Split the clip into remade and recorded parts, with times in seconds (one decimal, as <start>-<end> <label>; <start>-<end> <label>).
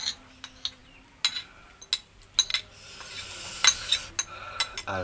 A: 0.0-5.0 recorded